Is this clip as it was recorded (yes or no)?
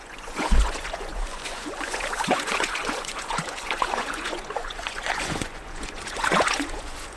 no